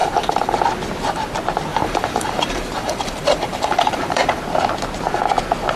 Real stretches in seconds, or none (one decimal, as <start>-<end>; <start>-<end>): 0.6-1.7; 4.4-5.8